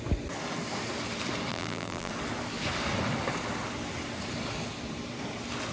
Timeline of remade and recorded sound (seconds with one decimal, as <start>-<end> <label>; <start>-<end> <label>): 0.0-1.5 recorded; 1.5-2.1 remade; 2.1-5.7 recorded